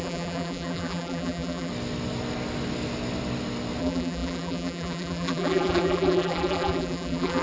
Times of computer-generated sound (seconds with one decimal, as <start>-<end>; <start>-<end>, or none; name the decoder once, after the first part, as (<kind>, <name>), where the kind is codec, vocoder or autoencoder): 0.0-1.7 (vocoder, BigVGAN v2); 3.8-7.4